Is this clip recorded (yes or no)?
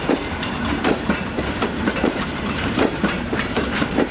no